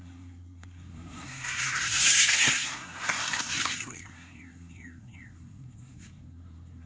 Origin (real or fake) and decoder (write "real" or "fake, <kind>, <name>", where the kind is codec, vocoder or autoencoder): fake, codec, SNAC